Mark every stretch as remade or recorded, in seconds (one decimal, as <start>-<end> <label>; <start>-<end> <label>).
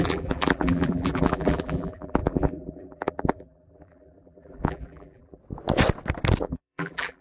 0.0-5.4 remade; 5.4-6.4 recorded; 6.4-7.2 remade